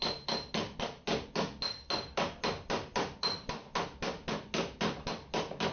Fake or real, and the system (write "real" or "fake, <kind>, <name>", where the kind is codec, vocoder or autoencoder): real